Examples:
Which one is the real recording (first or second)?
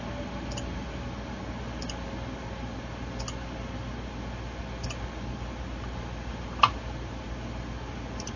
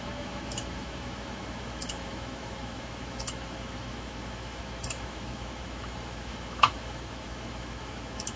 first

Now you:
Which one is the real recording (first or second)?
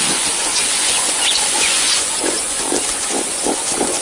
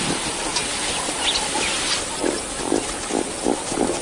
second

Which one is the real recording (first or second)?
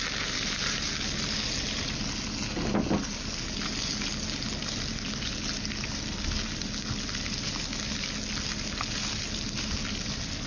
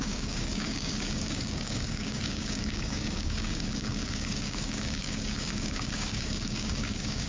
first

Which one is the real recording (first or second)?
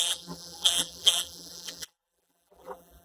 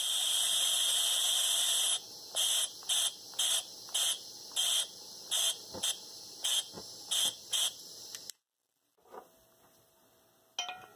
second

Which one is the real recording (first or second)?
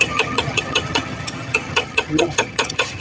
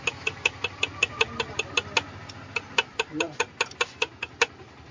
second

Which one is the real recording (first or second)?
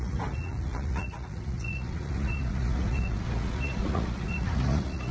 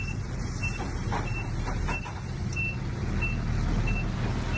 second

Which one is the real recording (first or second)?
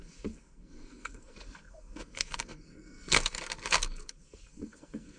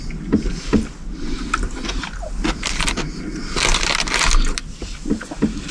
second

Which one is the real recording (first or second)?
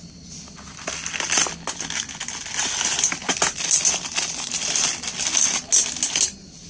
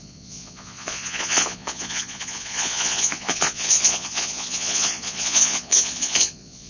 first